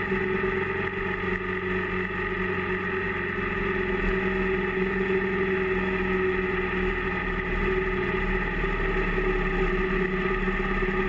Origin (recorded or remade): recorded